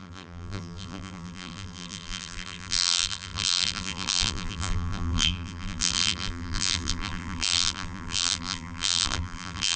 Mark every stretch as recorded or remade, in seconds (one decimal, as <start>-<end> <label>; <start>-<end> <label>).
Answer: 0.0-9.8 remade